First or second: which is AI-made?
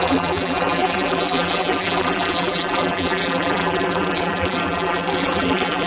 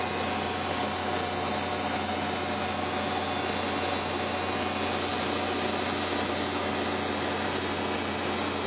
first